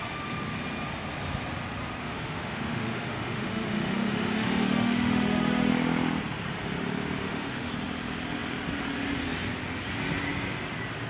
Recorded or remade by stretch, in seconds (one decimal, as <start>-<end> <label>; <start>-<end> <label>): 0.0-2.0 recorded; 2.0-5.7 remade; 5.7-7.2 recorded; 7.2-7.7 remade; 7.7-11.1 recorded